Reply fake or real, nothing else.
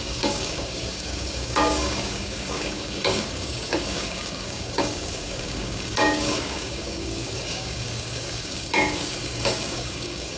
fake